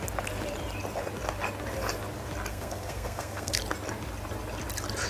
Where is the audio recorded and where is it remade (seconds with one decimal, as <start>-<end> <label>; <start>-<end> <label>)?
0.0-2.5 recorded; 2.5-3.6 remade; 3.6-5.1 recorded